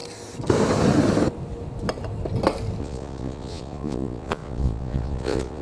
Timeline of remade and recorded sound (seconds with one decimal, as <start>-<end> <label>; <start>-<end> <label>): 0.0-2.8 recorded; 2.8-5.6 remade